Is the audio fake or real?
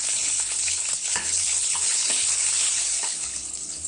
fake